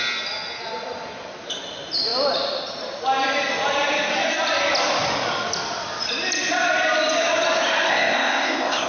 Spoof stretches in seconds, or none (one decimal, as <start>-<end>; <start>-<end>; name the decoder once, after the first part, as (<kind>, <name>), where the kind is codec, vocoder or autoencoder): 7.9-8.9 (codec, ZipCodec)